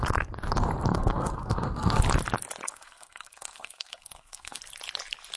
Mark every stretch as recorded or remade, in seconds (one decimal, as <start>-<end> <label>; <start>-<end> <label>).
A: 0.0-0.9 recorded; 0.9-2.0 remade; 2.0-2.7 recorded; 2.7-4.6 remade; 4.6-5.4 recorded